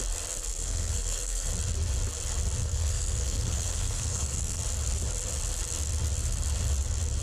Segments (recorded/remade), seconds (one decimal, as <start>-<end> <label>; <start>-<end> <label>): 0.0-0.5 recorded; 0.5-1.5 remade; 1.5-2.6 recorded; 2.6-4.6 remade; 4.6-7.2 recorded